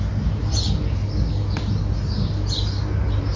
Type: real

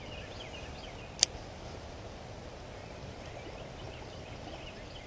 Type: real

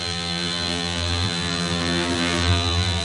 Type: fake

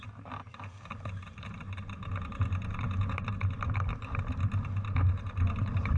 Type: fake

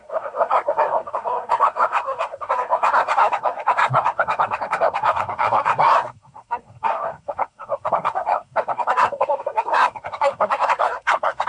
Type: fake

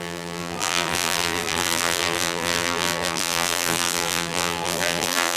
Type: fake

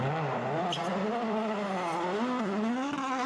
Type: real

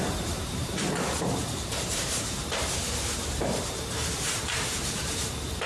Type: fake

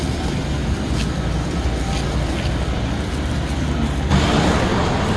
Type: real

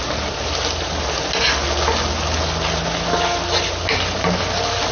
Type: real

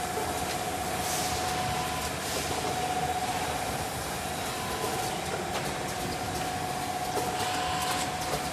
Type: real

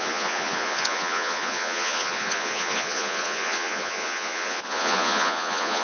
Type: fake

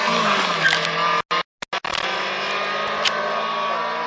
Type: real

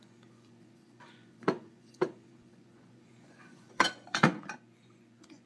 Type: fake